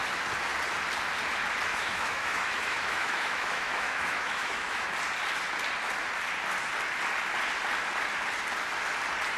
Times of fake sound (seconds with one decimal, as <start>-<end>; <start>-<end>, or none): 1.7-4.9